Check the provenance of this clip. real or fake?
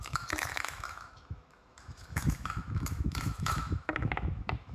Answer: fake